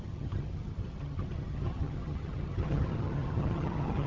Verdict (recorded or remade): remade